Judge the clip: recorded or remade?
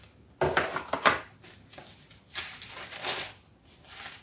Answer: recorded